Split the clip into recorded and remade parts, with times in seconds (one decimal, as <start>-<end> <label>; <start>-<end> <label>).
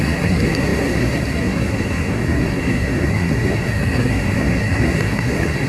0.0-5.7 remade